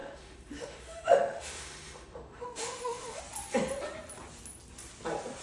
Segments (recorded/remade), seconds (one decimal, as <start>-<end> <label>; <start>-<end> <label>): 0.0-3.2 remade; 3.2-5.4 recorded